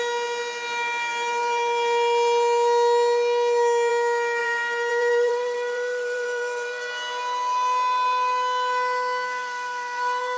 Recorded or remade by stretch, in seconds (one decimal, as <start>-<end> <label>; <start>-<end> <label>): 0.0-4.4 recorded; 4.4-6.9 remade; 6.9-9.4 recorded; 9.4-10.4 remade